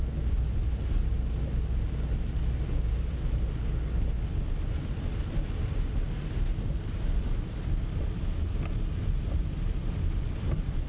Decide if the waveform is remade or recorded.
recorded